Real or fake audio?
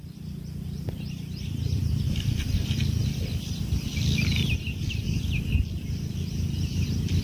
fake